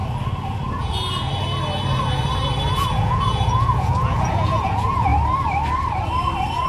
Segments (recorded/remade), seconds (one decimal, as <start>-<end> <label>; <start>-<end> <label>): 0.0-0.8 recorded; 0.8-1.3 remade; 1.3-2.9 recorded; 2.9-5.1 remade; 5.1-6.7 recorded